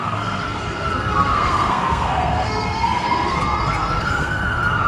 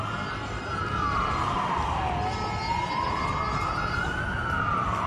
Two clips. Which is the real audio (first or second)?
second